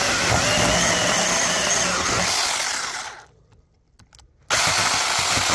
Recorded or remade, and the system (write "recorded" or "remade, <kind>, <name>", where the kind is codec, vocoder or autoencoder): recorded